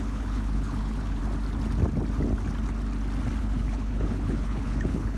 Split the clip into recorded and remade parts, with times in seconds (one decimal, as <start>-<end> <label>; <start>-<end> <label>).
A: 0.0-1.2 remade; 1.2-3.4 recorded; 3.4-5.2 remade